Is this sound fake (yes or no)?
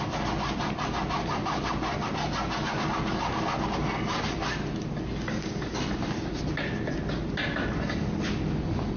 no